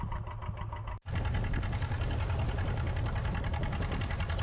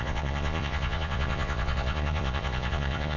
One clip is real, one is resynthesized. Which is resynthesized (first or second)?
second